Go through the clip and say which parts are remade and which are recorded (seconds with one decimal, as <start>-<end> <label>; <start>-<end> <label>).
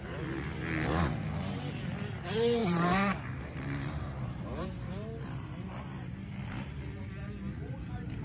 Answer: 0.0-2.6 recorded; 2.6-5.8 remade; 5.8-8.2 recorded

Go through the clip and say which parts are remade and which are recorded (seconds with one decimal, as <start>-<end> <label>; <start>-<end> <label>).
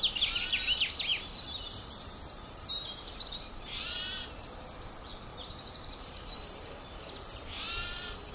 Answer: 0.0-1.1 recorded; 1.1-4.5 remade; 4.5-5.3 recorded; 5.3-6.8 remade; 6.8-8.3 recorded